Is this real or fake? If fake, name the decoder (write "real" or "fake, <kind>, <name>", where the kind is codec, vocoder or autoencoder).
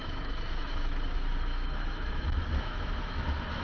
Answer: fake, autoencoder, DAC-VAE